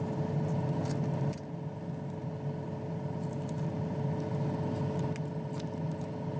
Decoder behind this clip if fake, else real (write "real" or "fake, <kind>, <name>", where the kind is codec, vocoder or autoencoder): real